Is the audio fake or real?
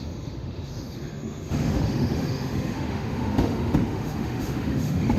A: fake